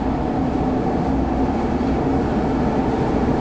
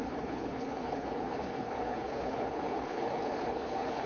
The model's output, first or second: second